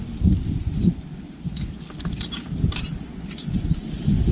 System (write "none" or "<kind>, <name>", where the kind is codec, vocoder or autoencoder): none